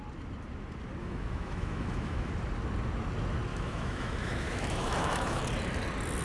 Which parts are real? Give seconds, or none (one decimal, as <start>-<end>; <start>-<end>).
0.0-1.0; 2.3-3.5; 5.4-6.2